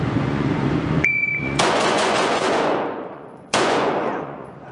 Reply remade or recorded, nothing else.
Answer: remade